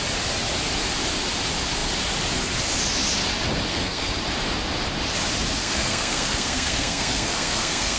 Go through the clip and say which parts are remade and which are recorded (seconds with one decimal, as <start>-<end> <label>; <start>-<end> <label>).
0.0-3.7 recorded; 3.7-4.2 remade; 4.2-5.6 recorded; 5.6-8.0 remade